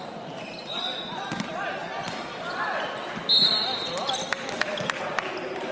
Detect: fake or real real